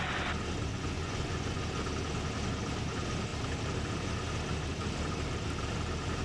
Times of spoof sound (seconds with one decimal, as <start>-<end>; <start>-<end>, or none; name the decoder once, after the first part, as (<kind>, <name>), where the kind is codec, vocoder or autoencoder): 0.7-1.6 (vocoder, Vocos)